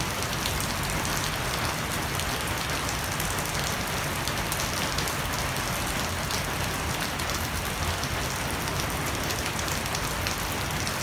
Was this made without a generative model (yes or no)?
yes